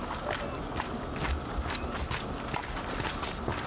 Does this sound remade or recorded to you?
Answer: recorded